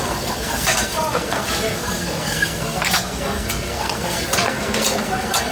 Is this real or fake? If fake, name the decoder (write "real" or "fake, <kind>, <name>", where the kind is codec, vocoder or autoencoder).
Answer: fake, codec, SNAC